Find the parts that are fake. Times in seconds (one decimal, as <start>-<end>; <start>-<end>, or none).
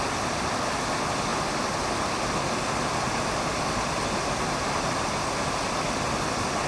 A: none